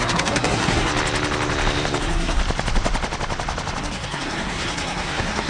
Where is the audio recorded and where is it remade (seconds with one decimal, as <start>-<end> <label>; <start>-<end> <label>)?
0.0-0.9 remade; 0.9-2.0 recorded; 2.0-2.4 remade; 2.4-3.8 recorded; 3.8-5.5 remade